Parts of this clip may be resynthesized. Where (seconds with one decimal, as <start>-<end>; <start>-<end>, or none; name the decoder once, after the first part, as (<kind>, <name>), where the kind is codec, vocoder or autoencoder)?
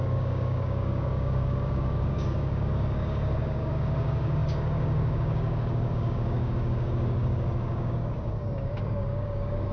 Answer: 0.0-9.7 (codec, DAC)